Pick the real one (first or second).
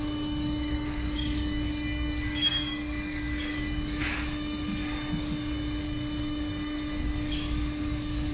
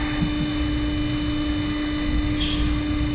second